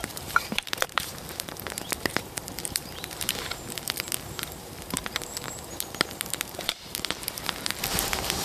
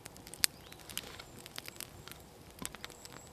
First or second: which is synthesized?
first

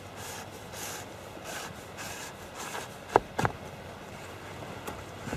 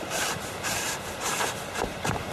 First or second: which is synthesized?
second